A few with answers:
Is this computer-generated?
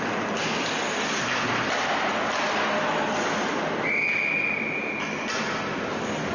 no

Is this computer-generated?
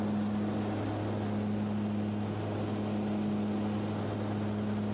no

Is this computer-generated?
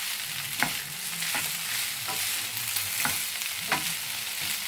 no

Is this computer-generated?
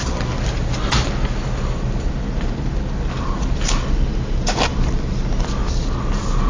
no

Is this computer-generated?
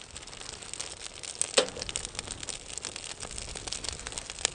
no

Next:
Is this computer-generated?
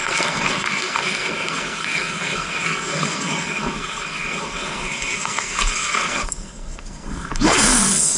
yes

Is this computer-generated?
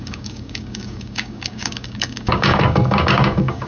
yes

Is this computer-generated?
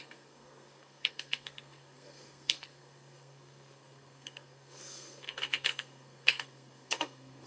yes